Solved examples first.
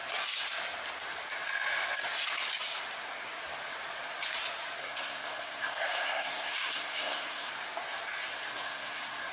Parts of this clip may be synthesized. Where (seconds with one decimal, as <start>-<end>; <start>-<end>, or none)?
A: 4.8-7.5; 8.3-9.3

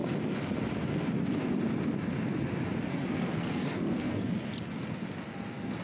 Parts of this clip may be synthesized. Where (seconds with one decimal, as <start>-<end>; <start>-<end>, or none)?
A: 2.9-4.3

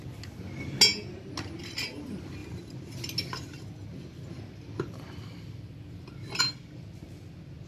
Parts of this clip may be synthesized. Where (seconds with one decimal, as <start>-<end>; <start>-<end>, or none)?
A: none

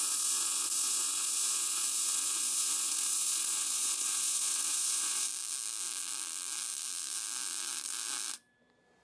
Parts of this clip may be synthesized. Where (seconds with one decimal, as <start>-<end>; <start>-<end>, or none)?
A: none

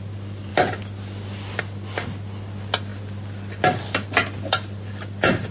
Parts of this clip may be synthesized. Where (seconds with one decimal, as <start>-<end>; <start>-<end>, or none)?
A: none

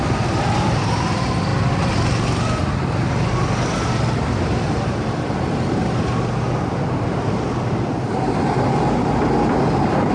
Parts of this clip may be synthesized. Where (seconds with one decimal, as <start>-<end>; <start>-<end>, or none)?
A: none

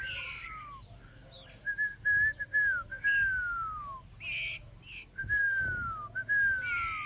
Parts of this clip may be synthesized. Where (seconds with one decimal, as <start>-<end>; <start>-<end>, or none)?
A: 0.4-1.0